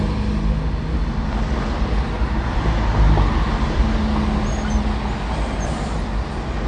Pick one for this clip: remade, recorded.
recorded